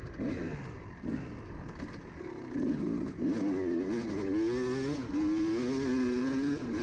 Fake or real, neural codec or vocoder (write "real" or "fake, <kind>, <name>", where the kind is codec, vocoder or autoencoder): real